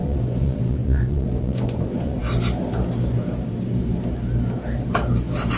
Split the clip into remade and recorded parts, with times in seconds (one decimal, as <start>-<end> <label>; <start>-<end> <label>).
0.0-2.2 remade; 2.2-5.6 recorded